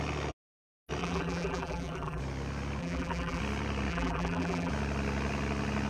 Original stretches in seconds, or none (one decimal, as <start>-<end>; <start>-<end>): 0.0-1.0; 2.2-2.8; 3.4-3.9; 4.7-5.9